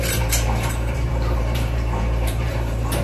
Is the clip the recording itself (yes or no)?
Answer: no